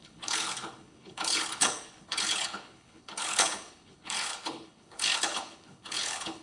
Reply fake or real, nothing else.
fake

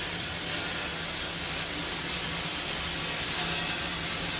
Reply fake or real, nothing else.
real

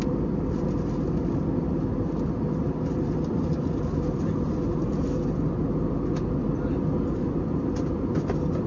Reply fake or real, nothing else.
real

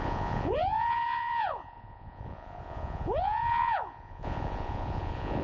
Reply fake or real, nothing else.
fake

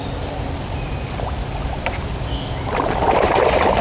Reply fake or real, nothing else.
real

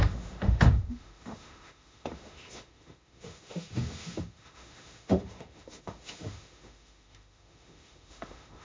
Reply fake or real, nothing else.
fake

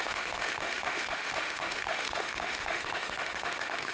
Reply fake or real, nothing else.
fake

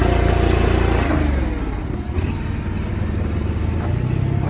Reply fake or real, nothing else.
real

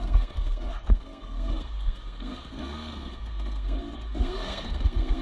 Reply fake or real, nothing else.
fake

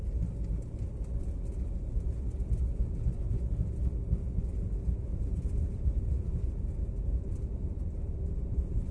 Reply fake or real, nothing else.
real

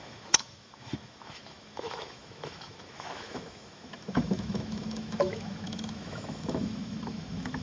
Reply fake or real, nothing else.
fake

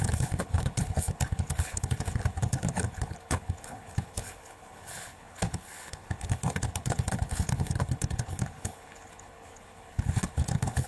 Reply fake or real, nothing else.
fake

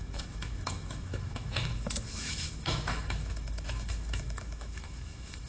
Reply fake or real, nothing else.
fake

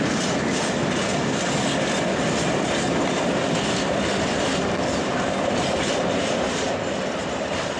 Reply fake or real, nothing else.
real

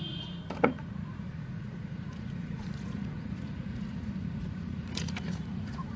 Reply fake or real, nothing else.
fake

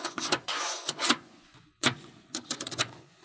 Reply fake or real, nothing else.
fake